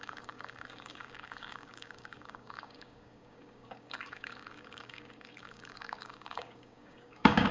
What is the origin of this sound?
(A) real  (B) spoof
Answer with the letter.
B